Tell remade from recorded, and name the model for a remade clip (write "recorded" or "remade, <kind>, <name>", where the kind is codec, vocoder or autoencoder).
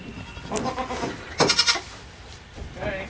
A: recorded